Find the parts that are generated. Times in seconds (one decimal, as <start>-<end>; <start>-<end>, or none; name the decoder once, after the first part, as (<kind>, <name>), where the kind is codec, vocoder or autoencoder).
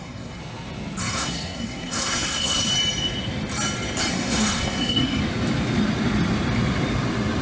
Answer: 0.0-0.4 (codec, SNAC); 1.0-2.7; 4.1-5.2